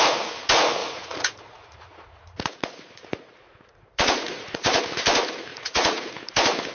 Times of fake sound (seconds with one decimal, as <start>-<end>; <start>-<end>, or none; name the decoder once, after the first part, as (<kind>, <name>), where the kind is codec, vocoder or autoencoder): 0.8-4.8 (vocoder, Vocos); 5.5-6.1